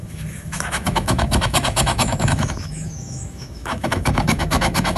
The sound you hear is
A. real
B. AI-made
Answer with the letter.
B